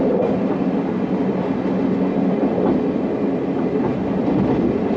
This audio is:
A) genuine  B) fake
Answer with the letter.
A